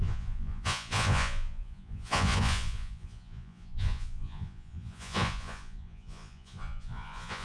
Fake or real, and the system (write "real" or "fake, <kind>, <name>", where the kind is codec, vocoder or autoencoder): fake, vocoder, Vocos